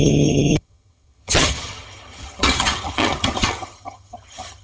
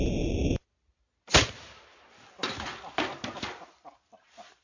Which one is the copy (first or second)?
first